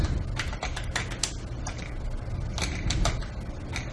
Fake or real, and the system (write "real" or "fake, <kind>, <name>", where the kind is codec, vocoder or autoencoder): real